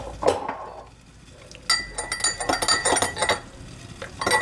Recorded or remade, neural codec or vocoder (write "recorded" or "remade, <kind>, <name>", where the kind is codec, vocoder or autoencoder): recorded